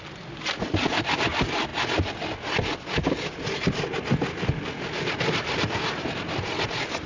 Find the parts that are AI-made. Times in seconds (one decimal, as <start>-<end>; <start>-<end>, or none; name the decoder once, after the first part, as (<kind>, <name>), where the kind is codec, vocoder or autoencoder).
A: none